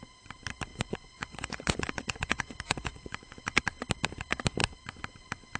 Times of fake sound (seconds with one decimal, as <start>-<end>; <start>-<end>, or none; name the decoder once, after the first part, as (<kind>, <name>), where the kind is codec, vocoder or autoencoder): 0.7-3.6 (vocoder, Vocos)